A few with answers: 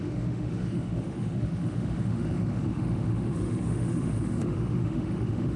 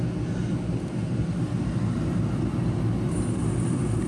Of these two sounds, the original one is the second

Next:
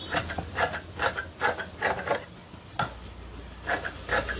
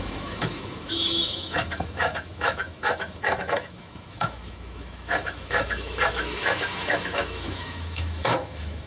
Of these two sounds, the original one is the first